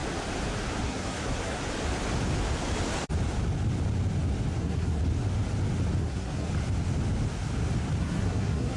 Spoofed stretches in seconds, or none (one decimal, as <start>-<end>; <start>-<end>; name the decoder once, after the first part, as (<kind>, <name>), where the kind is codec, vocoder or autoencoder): 0.7-1.6 (codec, SNAC); 4.6-5.0; 6.0-6.5; 8.0-8.8